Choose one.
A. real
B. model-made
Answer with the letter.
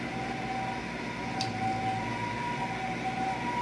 A